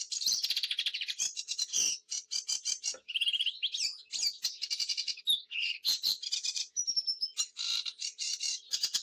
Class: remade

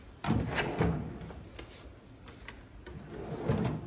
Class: recorded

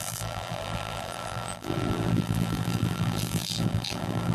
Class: remade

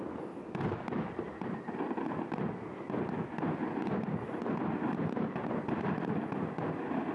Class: recorded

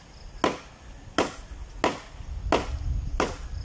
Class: recorded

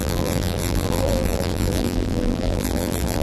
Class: remade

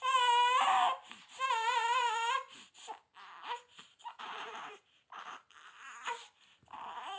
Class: remade